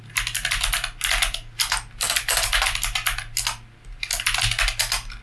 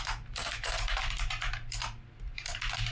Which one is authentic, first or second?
first